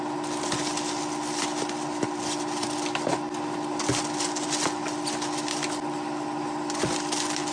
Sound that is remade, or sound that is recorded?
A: recorded